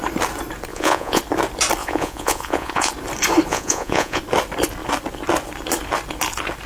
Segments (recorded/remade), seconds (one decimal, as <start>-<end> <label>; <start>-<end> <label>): 0.0-0.7 recorded; 0.7-1.2 remade; 1.2-1.8 recorded; 1.8-2.9 remade; 2.9-3.5 recorded; 3.5-4.2 remade; 4.2-6.7 recorded